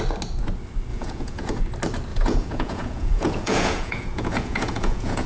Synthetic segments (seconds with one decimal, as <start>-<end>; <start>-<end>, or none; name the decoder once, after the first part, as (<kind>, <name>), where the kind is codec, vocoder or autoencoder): 0.9-1.6 (vocoder, Vocos); 2.1-5.3